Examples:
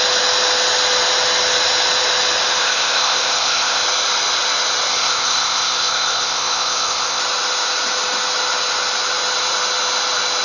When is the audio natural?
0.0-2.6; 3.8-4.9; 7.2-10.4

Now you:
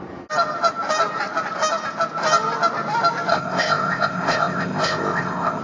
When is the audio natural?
0.0-3.3